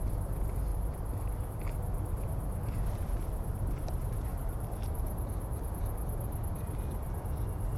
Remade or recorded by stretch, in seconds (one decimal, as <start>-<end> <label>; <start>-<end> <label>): 0.0-0.7 recorded; 0.7-1.5 remade; 1.5-4.3 recorded; 4.3-5.7 remade; 5.7-7.8 recorded